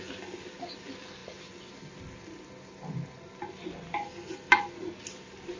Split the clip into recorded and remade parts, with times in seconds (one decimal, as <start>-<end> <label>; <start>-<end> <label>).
0.0-5.6 recorded